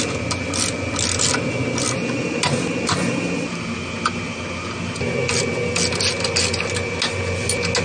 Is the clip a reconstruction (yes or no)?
no